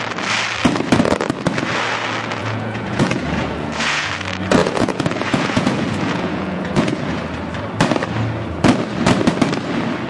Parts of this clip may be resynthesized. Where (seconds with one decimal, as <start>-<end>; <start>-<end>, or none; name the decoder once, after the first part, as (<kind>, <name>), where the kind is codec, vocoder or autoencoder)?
2.4-4.1 (vocoder, Vocos); 4.6-7.1